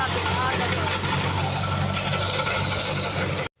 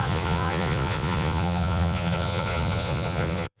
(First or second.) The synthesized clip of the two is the second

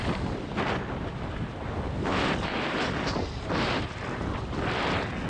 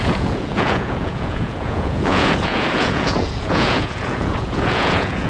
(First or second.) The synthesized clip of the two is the second